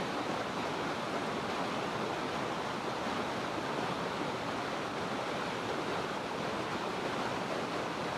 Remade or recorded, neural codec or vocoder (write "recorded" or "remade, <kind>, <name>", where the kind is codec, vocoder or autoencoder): recorded